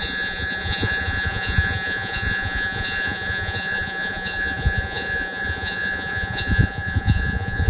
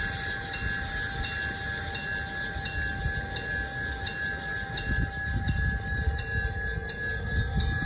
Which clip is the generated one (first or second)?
first